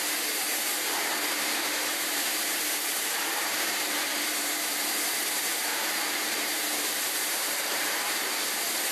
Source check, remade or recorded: remade